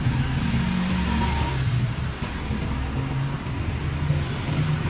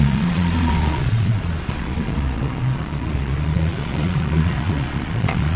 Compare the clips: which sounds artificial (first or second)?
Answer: second